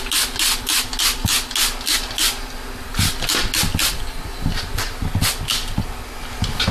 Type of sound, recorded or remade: recorded